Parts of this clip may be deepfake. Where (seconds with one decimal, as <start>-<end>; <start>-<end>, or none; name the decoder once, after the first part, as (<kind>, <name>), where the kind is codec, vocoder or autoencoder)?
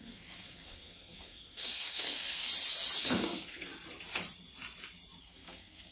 0.0-2.5 (codec, SNAC); 3.0-3.7; 5.2-5.9